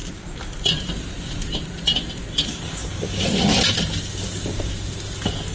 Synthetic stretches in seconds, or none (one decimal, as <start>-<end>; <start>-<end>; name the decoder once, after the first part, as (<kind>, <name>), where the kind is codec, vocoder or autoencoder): none